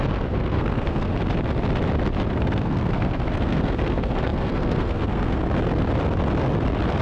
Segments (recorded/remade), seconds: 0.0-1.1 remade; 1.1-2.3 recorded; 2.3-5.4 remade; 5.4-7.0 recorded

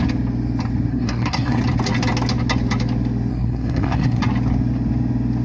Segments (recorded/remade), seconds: 0.0-0.9 recorded; 0.9-1.6 remade; 1.6-3.3 recorded; 3.3-4.2 remade; 4.2-5.4 recorded

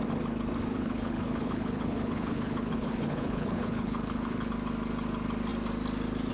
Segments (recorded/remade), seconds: 0.0-0.7 recorded; 0.7-4.5 remade; 4.5-6.3 recorded

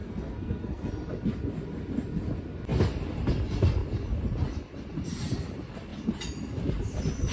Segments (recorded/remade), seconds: 0.0-0.9 remade; 0.9-7.3 recorded

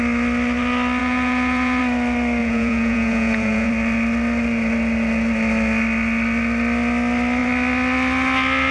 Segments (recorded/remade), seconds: 0.0-1.0 recorded; 1.0-1.8 remade; 1.8-2.4 recorded; 2.4-3.7 remade; 3.7-8.7 recorded

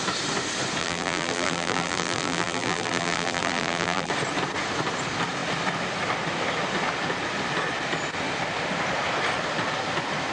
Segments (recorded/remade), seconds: 0.0-0.8 recorded; 0.8-4.1 remade; 4.1-10.3 recorded

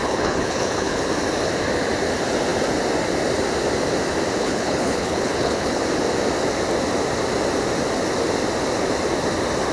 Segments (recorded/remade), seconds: 0.0-1.1 remade; 1.1-4.4 recorded; 4.4-5.8 remade; 5.8-9.7 recorded

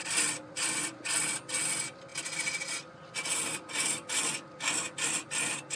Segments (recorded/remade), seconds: 0.0-5.8 recorded